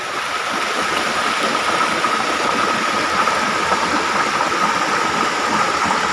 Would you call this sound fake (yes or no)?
no